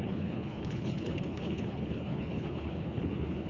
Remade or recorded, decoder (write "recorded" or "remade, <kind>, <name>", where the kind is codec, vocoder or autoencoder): remade, codec, HILCodec